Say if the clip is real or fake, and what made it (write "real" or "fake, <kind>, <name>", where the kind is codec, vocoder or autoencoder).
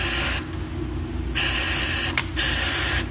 real